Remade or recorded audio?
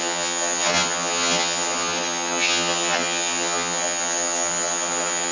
remade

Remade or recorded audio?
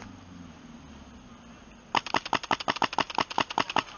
recorded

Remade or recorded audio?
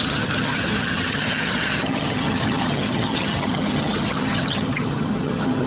remade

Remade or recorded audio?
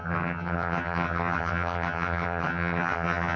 remade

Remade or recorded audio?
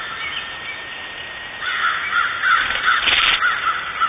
recorded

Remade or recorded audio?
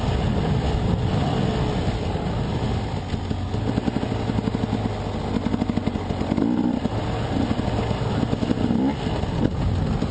recorded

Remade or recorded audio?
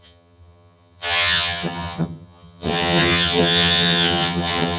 remade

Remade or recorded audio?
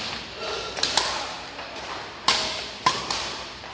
recorded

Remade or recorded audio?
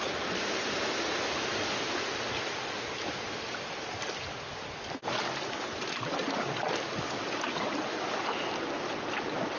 recorded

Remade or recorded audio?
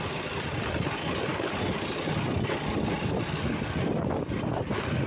recorded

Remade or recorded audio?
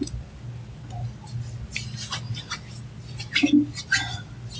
recorded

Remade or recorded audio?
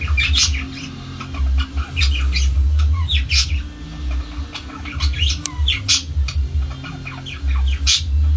recorded